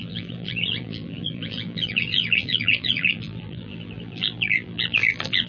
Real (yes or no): no